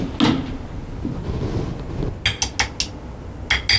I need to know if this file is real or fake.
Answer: real